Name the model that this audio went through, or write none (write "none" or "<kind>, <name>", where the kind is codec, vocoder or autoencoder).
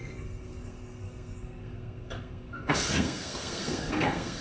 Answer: codec, SNAC